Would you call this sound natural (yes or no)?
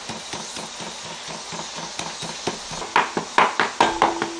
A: yes